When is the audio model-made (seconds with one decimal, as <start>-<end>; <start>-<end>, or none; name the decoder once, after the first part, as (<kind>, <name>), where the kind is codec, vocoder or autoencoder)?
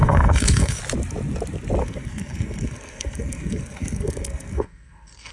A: 0.0-0.8 (codec, SNAC); 1.8-5.3